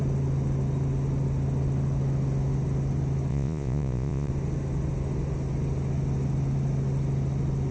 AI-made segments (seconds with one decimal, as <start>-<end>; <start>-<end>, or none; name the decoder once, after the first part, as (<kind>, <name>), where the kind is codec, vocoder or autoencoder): 3.3-4.3 (vocoder, Vocos)